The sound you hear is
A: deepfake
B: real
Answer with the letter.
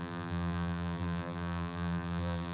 A